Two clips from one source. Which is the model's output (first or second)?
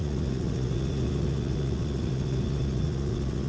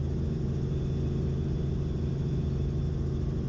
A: first